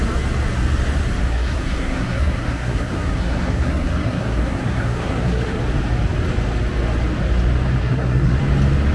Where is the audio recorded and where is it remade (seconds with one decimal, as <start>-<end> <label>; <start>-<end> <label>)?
0.0-1.3 recorded; 1.3-5.6 remade; 5.6-7.8 recorded; 7.8-8.4 remade; 8.4-8.9 recorded